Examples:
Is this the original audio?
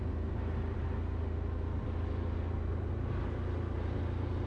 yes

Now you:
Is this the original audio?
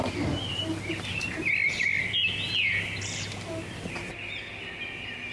yes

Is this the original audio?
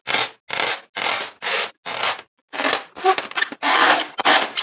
yes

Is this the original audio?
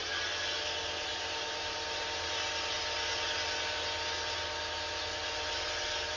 yes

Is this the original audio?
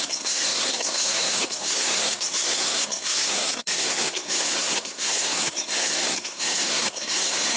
no